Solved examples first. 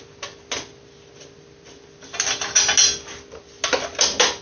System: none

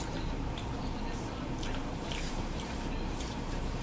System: vocoder, BigVGAN v2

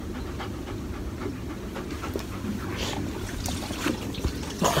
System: none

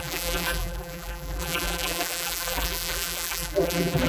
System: vocoder, BigVGAN v2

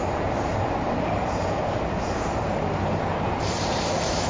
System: vocoder, BigVGAN v2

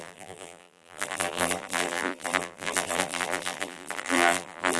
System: vocoder, BigVGAN v2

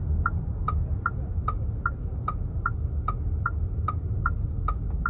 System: none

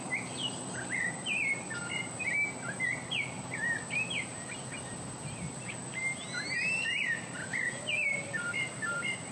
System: vocoder, BigVGAN v2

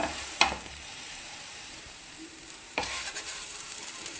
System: vocoder, BigVGAN v2